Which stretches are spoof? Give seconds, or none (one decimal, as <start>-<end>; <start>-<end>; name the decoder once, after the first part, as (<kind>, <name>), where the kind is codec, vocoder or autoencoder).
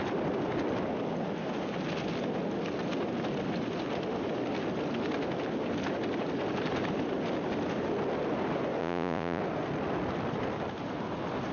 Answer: 8.8-9.4 (vocoder, Vocos)